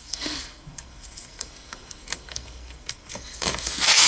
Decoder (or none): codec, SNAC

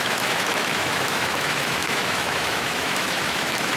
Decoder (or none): autoencoder, DAC-VAE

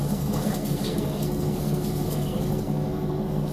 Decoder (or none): codec, SNAC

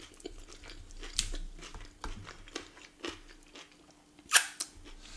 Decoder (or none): none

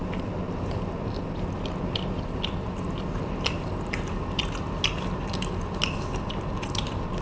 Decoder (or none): none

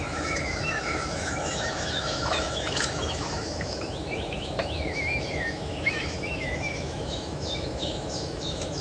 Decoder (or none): autoencoder, DAC-VAE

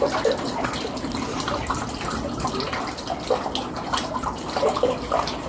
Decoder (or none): none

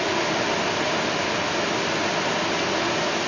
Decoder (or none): none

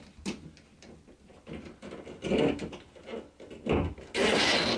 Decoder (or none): none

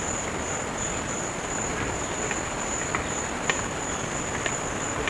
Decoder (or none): vocoder, BigVGAN v2